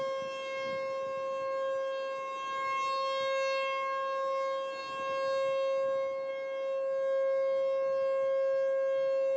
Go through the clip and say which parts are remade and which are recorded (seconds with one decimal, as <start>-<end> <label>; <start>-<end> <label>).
0.0-9.4 recorded